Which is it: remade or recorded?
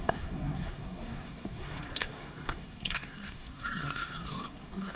remade